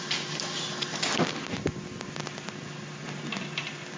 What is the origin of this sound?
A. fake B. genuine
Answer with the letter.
B